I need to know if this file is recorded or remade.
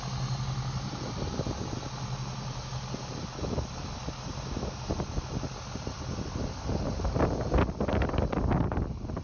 recorded